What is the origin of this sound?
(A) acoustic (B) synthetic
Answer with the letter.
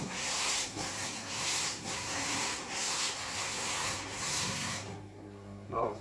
B